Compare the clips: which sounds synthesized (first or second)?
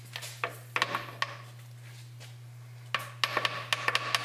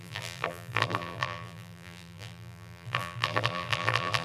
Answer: second